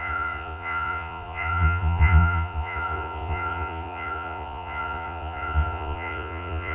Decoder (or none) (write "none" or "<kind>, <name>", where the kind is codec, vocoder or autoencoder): vocoder, Vocos